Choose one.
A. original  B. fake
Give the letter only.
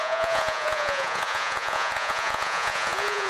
B